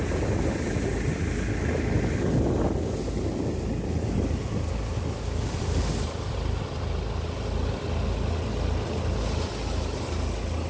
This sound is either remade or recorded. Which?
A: recorded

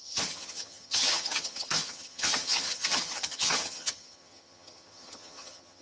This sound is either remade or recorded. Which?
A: remade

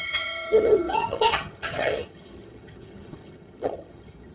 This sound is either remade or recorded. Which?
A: remade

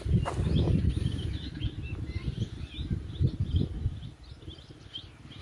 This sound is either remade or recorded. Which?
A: recorded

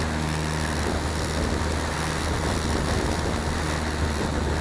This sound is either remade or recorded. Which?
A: recorded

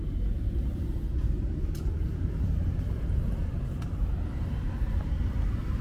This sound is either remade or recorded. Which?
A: remade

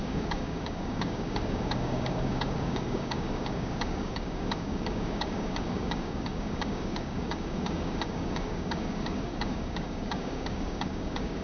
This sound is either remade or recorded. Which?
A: remade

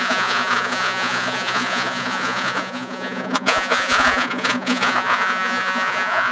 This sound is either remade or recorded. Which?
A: remade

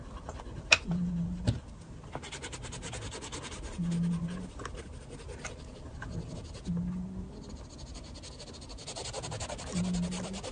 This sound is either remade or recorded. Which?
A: recorded